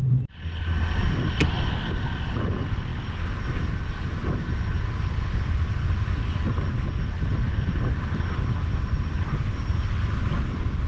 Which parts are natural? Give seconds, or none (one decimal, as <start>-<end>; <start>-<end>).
0.0-10.9